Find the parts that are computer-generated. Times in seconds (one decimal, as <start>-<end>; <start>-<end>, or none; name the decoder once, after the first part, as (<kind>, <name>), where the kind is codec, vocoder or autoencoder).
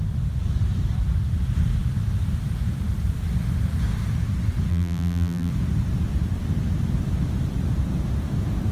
4.7-5.5 (vocoder, BigVGAN v2)